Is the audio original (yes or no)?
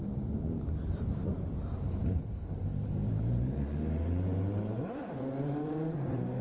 no